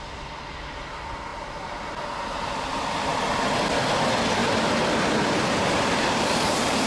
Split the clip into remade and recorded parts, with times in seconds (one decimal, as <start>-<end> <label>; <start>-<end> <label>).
0.0-4.4 recorded; 4.4-6.9 remade